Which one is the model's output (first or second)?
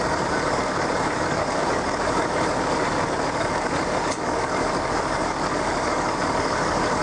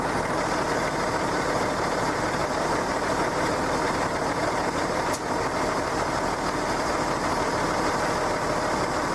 first